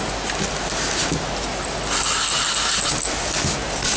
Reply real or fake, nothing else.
real